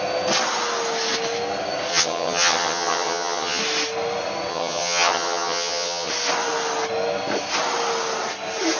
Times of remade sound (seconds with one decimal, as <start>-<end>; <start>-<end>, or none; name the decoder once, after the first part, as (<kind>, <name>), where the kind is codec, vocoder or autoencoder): 1.9-3.6 (vocoder, HiFi-GAN); 4.5-6.1